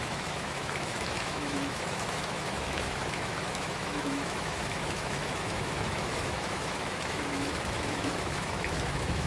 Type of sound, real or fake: fake